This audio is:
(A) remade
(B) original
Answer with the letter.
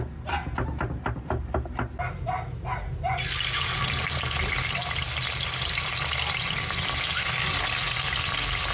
B